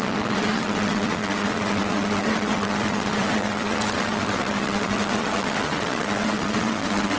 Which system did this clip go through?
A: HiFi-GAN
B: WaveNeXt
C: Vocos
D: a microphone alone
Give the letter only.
B